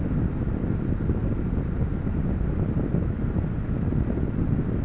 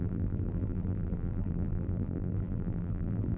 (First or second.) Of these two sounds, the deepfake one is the second